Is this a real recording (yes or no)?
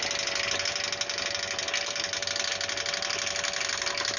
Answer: yes